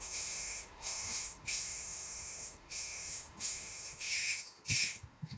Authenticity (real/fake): fake